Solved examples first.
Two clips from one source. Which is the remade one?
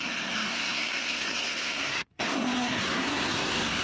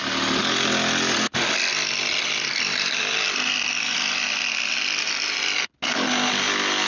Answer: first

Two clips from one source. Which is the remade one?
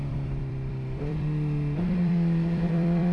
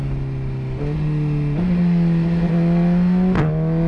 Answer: first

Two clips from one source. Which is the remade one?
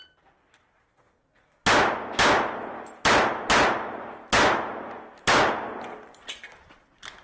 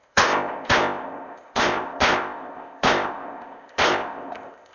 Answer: second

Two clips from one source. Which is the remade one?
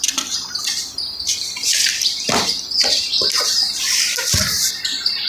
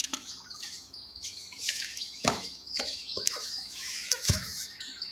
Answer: second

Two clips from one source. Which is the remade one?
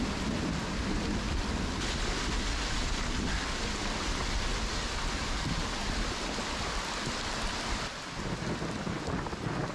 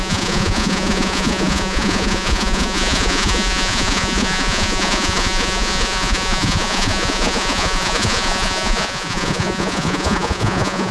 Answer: second